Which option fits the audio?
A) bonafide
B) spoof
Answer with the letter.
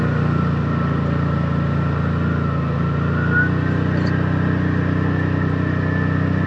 A